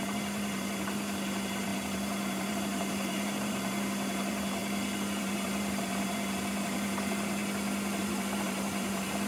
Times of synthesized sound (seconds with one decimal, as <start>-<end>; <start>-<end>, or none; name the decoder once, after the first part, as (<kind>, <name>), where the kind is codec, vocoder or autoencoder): 0.0-4.6 (vocoder, BigVGAN v2); 5.2-7.4; 8.0-9.3